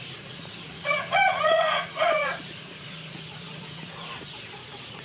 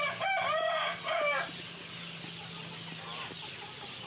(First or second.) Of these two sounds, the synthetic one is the first